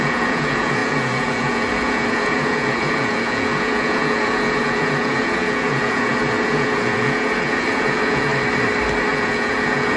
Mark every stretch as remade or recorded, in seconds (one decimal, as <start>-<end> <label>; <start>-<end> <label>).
0.0-8.3 remade; 8.3-9.1 recorded; 9.1-10.0 remade